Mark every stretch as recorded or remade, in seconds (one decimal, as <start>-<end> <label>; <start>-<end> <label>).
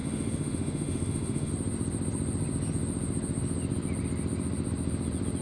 0.0-1.5 remade; 1.5-5.4 recorded